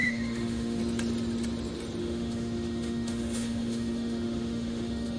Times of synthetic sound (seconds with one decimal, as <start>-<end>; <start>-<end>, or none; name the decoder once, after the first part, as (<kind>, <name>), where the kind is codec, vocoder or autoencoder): 0.0-0.8 (autoencoder, DAC-VAE); 2.0-5.2